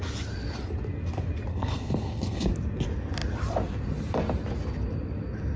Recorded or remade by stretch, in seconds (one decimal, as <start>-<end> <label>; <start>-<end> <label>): 0.0-1.5 recorded; 1.5-2.5 remade; 2.5-5.6 recorded